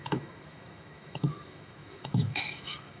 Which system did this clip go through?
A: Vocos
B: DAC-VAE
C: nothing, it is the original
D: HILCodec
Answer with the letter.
B